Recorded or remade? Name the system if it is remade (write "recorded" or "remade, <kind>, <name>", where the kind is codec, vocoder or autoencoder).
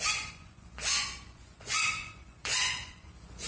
remade, vocoder, Vocos